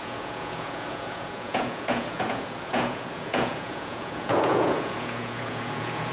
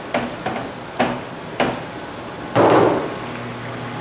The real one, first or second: second